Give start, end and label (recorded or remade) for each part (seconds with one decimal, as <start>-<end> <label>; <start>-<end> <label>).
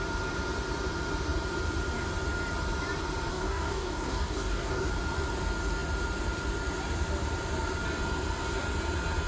0.0-3.3 recorded; 3.3-4.9 remade; 4.9-9.3 recorded